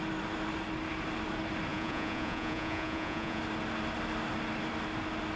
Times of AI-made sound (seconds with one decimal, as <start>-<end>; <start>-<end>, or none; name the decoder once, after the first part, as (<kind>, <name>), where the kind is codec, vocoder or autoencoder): 1.7-3.4 (vocoder, Vocos)